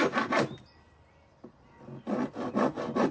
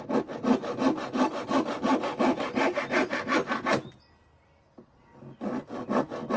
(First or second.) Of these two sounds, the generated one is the first